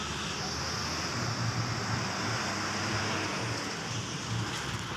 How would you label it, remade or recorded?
recorded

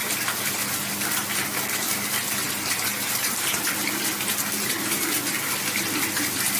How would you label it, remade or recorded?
recorded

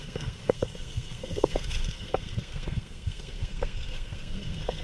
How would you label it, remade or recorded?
remade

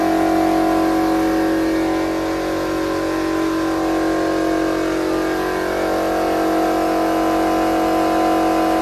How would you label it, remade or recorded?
recorded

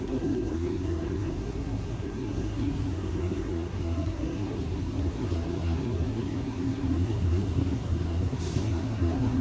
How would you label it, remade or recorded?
remade